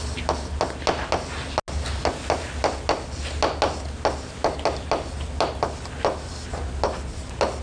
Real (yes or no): yes